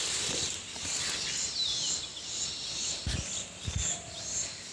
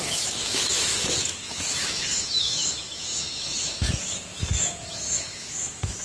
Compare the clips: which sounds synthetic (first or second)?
second